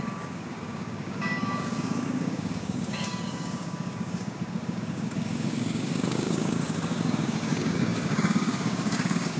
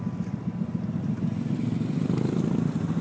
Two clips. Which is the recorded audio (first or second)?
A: second